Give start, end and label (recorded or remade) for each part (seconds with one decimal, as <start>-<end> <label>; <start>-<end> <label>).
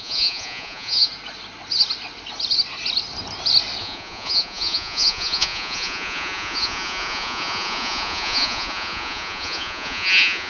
0.0-1.1 remade; 1.1-3.8 recorded; 3.8-10.5 remade